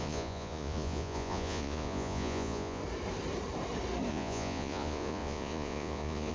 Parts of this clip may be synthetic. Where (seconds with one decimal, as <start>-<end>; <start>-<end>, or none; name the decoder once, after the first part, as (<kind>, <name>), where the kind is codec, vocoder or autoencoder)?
0.0-2.8 (vocoder, Vocos); 4.1-6.3